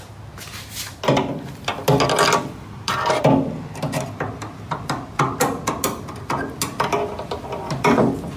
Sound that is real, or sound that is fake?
real